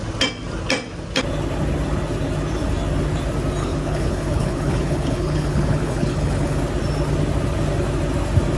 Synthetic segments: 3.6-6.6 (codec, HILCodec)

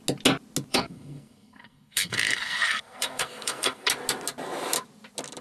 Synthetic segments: 0.7-3.9 (codec, SNAC)

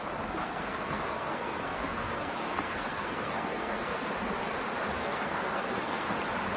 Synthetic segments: 0.4-4.1 (codec, SNAC); 5.0-6.1